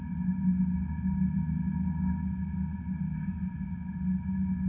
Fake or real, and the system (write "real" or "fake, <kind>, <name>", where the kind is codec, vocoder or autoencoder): real